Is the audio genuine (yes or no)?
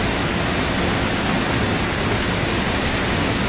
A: yes